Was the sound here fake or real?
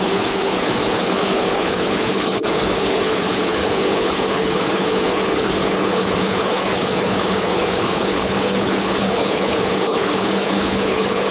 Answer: fake